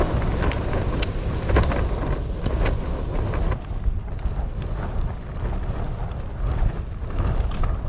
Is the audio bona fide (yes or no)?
yes